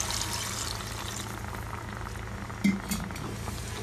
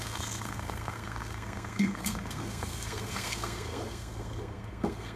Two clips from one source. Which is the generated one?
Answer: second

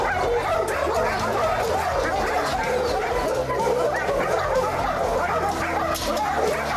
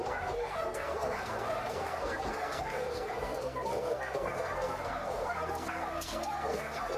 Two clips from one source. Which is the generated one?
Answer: second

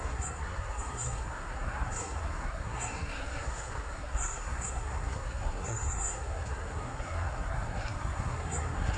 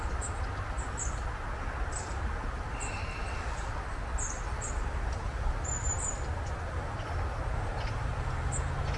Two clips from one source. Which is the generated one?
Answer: first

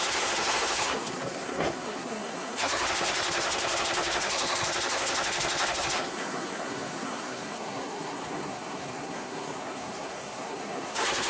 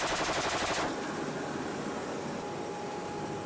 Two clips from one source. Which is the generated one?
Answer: first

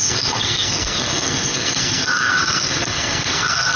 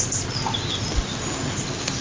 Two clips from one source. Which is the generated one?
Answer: first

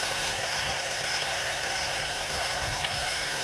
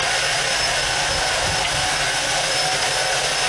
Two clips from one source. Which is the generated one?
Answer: first